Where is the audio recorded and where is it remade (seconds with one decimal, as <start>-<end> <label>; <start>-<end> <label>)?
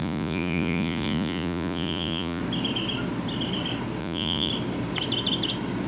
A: 0.0-2.4 remade; 2.4-4.0 recorded; 4.0-4.5 remade; 4.5-5.9 recorded